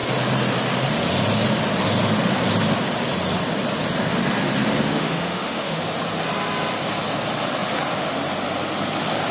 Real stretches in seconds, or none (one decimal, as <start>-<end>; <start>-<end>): 0.0-4.9; 5.8-9.3

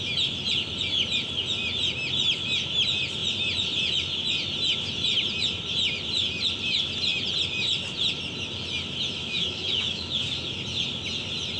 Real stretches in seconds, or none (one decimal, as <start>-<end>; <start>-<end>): 0.0-9.2; 10.1-11.6

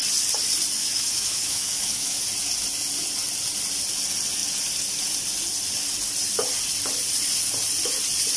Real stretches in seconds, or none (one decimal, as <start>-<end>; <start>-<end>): 0.0-0.8; 2.2-8.4

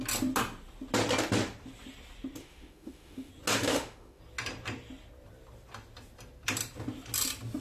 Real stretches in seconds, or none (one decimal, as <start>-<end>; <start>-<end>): 0.0-2.4; 3.3-3.7; 4.2-7.6

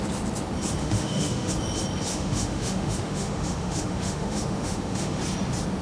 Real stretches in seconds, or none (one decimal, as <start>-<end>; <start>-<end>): 0.0-0.8; 1.5-2.1; 5.2-5.8

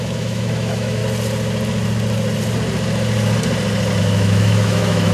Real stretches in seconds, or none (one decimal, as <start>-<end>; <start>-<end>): 1.0-4.0